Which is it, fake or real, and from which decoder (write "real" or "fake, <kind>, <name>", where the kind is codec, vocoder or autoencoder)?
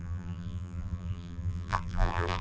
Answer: fake, vocoder, BigVGAN v2